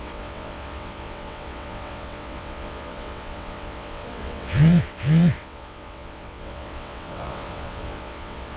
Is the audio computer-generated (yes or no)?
yes